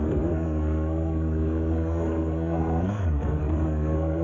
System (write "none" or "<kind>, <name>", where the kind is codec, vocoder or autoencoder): codec, SNAC